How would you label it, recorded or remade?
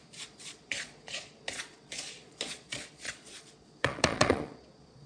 remade